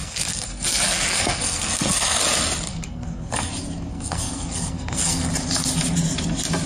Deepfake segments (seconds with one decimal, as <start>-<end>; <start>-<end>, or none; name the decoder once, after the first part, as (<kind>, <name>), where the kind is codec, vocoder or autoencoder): 0.0-2.2 (codec, SNAC); 2.7-3.5; 3.9-5.3